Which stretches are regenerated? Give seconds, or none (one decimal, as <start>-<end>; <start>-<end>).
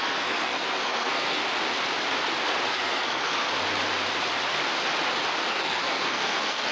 0.0-1.4; 2.7-3.5; 5.5-6.7